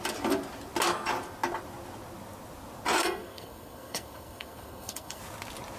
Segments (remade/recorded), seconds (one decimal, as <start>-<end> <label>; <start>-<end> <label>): 0.0-3.0 recorded; 3.0-5.2 remade; 5.2-5.8 recorded